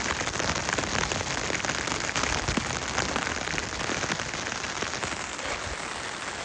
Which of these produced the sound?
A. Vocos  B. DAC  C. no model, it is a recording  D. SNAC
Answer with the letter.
C